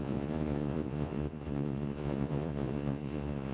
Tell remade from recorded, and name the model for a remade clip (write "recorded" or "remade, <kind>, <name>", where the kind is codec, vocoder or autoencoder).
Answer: remade, vocoder, Vocos